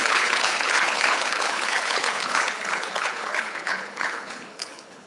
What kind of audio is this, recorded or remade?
remade